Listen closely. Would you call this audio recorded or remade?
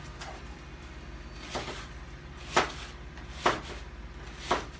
recorded